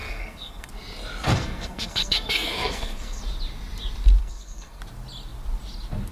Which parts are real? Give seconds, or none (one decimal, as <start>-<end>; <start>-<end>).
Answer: 0.7-1.3; 3.2-4.2; 4.8-6.1